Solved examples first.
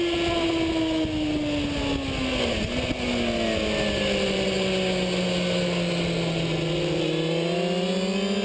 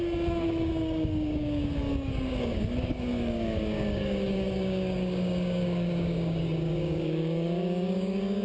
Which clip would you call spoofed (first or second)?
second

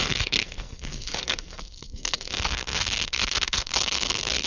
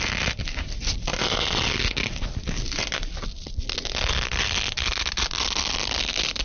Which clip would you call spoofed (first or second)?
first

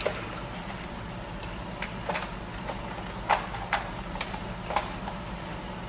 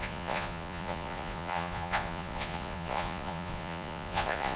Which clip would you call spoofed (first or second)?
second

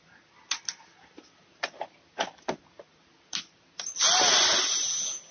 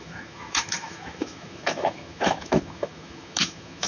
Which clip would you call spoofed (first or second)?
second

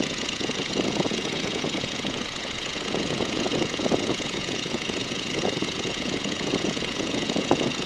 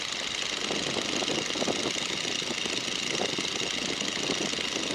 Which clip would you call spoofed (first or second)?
first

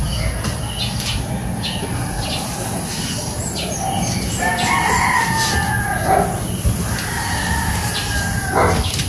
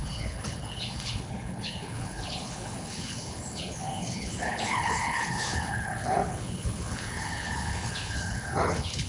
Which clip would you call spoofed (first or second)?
second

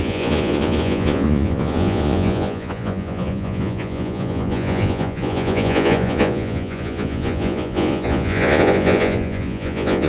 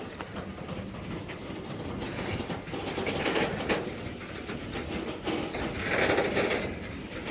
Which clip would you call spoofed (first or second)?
first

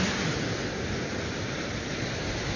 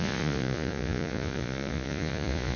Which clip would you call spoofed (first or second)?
second